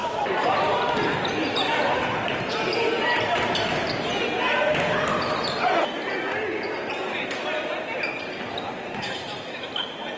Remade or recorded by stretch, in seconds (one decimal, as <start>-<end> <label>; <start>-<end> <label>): 0.0-4.3 remade; 4.3-10.2 recorded